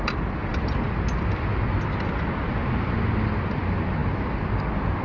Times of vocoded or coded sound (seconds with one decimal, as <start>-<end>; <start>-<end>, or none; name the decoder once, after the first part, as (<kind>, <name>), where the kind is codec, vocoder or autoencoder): none